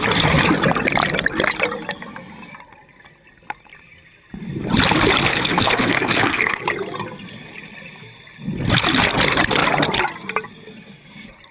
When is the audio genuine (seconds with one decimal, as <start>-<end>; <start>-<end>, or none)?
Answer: 0.0-5.3; 6.6-11.5